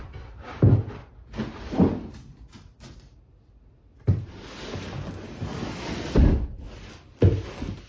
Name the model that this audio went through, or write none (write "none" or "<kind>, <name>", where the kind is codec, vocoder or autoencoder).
none